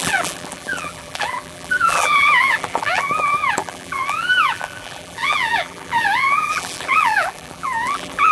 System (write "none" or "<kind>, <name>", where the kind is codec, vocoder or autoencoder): vocoder, BigVGAN v2